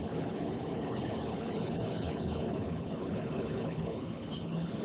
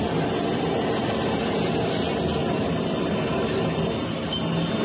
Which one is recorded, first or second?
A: second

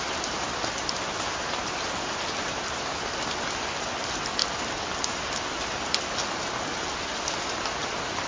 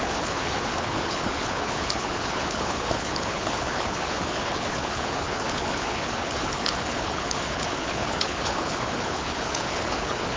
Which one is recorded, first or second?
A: first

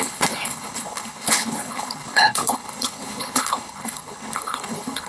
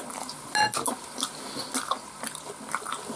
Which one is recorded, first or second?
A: second